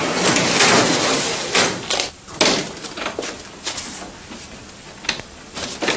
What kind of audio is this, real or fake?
real